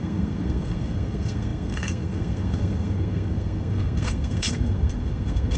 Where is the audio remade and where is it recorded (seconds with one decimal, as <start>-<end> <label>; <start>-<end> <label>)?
0.0-5.6 remade